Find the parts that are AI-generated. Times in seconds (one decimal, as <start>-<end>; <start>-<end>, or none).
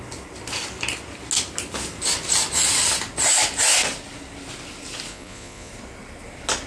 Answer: 5.1-5.7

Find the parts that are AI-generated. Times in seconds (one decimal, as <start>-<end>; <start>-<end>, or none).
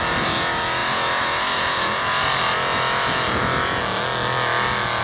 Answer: 0.8-3.8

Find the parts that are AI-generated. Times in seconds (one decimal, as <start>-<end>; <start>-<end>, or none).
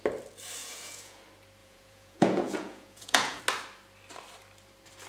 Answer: 0.6-1.2; 1.6-3.4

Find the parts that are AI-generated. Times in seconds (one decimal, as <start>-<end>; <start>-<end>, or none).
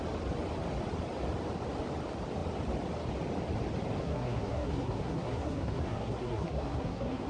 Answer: 4.0-7.3